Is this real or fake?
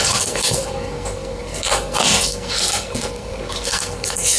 fake